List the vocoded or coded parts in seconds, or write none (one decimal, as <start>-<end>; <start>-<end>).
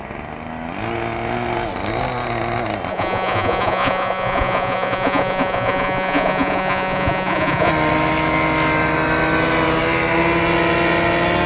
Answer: 2.9-7.7